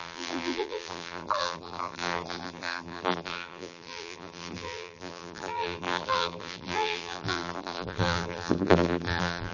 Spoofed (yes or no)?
yes